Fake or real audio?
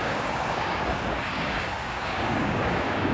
fake